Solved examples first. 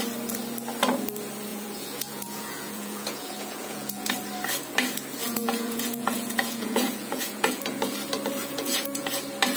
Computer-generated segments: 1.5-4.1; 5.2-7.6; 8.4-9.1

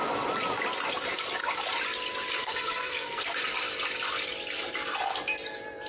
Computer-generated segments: 2.4-3.4

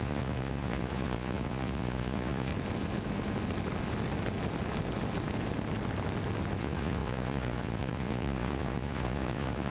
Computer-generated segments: 0.0-2.5; 6.6-9.7

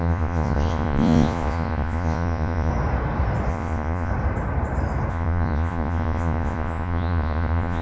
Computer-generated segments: 0.0-2.7; 3.5-4.1; 5.1-7.8